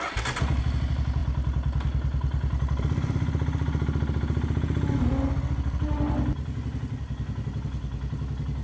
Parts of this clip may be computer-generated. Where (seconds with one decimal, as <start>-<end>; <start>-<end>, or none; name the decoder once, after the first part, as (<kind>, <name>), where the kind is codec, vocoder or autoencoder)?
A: none